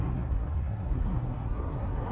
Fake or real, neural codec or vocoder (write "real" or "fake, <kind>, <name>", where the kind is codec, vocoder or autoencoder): fake, codec, SNAC